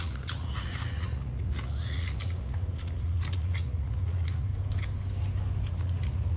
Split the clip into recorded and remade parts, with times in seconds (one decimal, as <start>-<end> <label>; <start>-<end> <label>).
0.0-4.5 remade; 4.5-5.7 recorded; 5.7-6.4 remade